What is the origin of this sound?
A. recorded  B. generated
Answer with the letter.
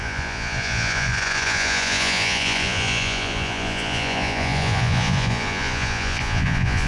B